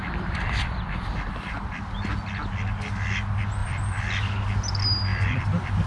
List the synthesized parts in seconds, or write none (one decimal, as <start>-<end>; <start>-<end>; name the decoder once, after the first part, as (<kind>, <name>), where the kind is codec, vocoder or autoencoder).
0.0-1.8 (vocoder, BigVGAN v2); 3.6-4.1; 5.1-5.9